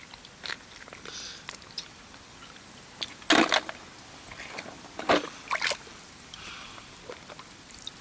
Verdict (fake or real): real